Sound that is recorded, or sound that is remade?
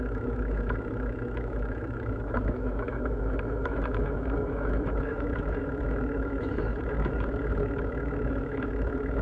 remade